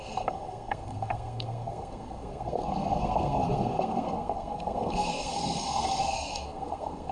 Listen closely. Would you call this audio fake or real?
fake